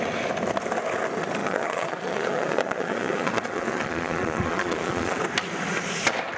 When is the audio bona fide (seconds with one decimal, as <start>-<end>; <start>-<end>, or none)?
0.0-1.4; 5.2-6.4